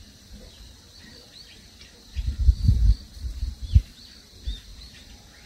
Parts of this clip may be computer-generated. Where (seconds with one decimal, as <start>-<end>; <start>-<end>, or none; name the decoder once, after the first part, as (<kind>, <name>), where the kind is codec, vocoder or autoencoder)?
none